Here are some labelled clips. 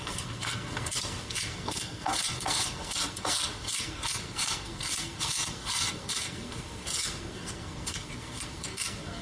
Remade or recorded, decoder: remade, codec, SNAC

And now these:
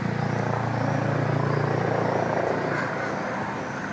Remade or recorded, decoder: recorded